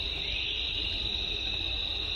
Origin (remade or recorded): recorded